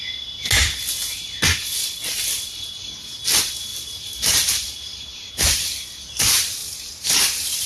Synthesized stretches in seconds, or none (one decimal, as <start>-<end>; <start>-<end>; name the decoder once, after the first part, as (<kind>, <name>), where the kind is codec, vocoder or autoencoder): 3.7-5.7 (vocoder, BigVGAN v2); 6.6-7.7